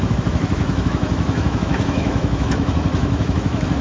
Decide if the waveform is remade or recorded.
remade